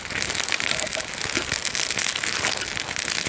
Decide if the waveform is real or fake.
real